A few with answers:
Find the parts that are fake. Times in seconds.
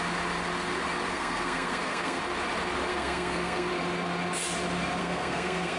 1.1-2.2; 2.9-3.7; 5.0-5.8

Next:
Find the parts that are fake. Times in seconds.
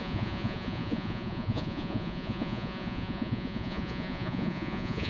0.0-5.1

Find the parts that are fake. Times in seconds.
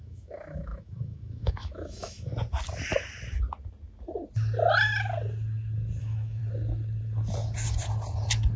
0.0-2.3; 6.0-6.4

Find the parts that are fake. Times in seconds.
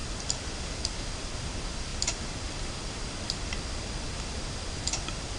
none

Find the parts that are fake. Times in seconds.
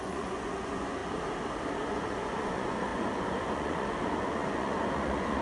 0.0-1.0; 1.8-5.4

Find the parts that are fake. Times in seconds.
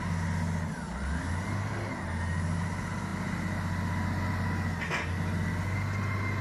none